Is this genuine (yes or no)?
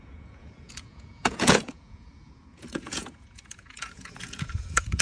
no